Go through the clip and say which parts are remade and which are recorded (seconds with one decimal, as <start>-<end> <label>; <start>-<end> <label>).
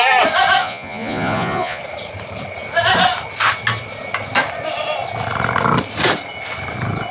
0.0-0.6 recorded; 0.6-1.8 remade; 1.8-7.1 recorded